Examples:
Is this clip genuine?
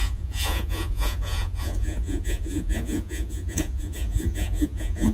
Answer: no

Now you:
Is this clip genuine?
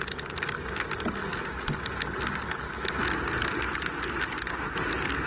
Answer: yes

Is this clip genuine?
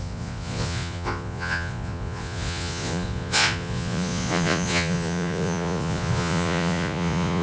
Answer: no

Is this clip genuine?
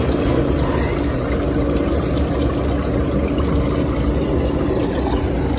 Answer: yes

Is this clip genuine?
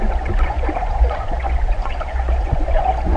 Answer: no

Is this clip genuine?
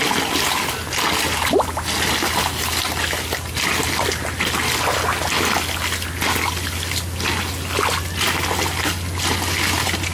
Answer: yes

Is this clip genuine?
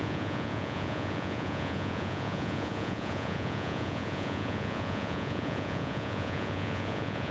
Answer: no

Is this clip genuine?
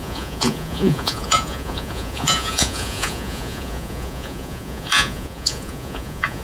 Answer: no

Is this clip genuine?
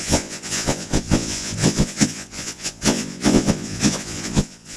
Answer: no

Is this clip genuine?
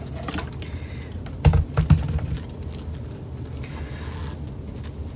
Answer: yes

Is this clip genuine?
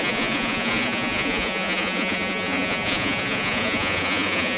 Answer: no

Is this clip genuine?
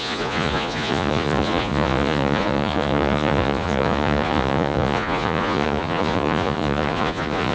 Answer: no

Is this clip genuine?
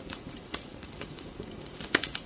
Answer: no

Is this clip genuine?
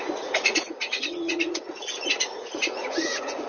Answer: no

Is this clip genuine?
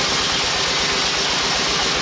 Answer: yes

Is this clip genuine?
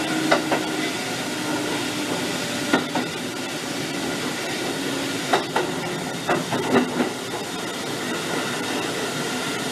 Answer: yes